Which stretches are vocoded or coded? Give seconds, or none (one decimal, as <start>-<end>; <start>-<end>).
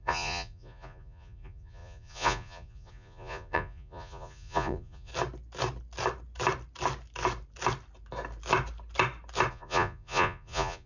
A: 0.0-5.1; 9.5-10.9